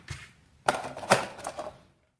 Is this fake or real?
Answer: real